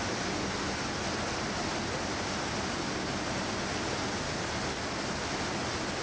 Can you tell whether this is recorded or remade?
recorded